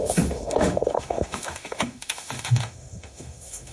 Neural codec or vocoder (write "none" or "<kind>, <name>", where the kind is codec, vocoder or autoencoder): autoencoder, DAC-VAE